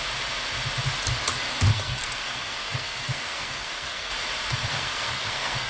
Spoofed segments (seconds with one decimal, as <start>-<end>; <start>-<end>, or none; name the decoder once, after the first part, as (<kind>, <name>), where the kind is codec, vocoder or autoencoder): 1.7-4.1 (codec, SNAC); 4.7-5.7